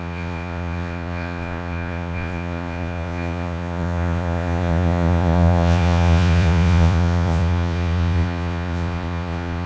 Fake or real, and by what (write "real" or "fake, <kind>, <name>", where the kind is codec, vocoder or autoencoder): fake, vocoder, Vocos